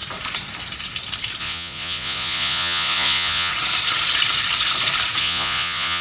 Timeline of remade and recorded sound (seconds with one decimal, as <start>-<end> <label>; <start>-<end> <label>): 0.0-1.4 recorded; 1.4-3.5 remade; 3.5-5.2 recorded; 5.2-6.0 remade